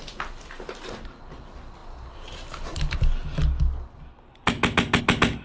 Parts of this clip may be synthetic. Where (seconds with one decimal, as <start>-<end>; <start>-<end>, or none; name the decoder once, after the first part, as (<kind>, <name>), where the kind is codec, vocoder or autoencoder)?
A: none